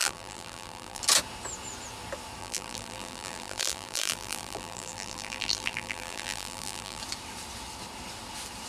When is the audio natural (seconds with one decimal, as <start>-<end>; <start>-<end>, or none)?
1.0-2.4; 7.0-8.7